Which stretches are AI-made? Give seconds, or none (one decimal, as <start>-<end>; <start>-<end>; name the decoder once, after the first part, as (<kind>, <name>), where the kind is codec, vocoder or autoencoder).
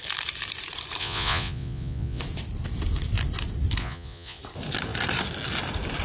1.0-2.2 (vocoder, Vocos); 3.8-4.4